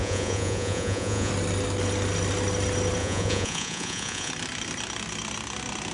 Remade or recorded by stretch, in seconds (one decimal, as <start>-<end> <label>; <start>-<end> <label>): 0.0-1.3 remade; 1.3-3.0 recorded; 3.0-4.3 remade; 4.3-5.9 recorded